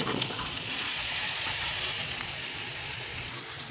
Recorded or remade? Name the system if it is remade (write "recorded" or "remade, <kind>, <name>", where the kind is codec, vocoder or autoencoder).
remade, vocoder, Vocos